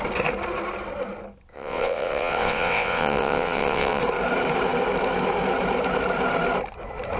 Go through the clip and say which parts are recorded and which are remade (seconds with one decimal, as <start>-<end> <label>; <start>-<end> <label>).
0.0-1.5 recorded; 1.5-4.0 remade; 4.0-7.2 recorded